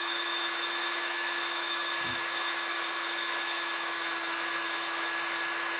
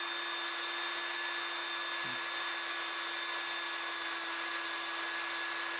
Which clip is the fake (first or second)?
first